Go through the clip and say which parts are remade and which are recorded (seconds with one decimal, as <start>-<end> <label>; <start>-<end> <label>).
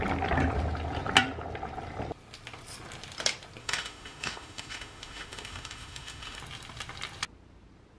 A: 0.0-3.6 recorded; 3.6-6.4 remade; 6.4-8.0 recorded